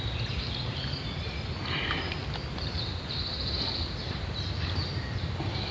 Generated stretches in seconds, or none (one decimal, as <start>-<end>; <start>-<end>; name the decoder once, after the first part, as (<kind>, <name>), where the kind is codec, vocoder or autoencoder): 2.2-3.1 (vocoder, BigVGAN v2)